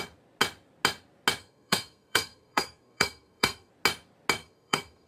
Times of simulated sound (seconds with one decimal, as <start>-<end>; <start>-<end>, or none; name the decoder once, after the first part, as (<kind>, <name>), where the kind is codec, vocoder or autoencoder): 1.4-3.7 (codec, SNAC); 4.4-5.1